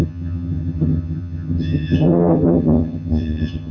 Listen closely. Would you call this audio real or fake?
fake